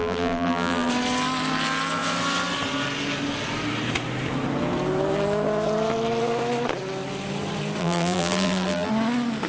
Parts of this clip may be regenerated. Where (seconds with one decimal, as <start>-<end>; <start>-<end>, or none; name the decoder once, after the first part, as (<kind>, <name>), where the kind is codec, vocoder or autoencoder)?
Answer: 0.0-0.9 (vocoder, BigVGAN v2); 7.8-8.9